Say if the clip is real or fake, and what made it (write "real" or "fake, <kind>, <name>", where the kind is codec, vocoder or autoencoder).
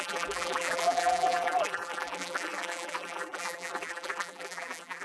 fake, vocoder, BigVGAN v2